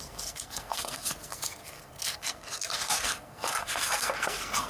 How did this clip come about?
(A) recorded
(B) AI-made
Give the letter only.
B